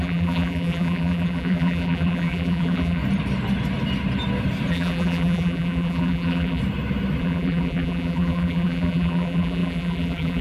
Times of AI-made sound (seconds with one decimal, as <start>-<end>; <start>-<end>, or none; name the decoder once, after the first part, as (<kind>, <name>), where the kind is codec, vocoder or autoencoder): 0.0-3.0 (vocoder, BigVGAN v2); 4.7-6.6; 7.2-10.4